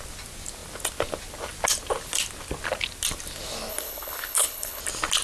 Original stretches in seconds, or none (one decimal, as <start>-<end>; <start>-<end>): 0.0-3.7; 4.8-5.2